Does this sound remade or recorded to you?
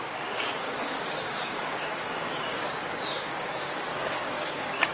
remade